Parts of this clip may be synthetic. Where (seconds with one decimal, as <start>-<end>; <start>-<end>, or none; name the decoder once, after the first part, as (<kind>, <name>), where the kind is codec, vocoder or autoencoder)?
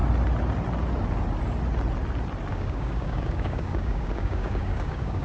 2.5-5.2 (codec, DAC)